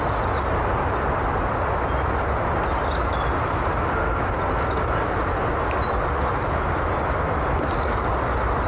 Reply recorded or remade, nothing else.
recorded